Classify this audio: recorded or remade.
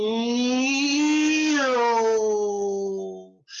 recorded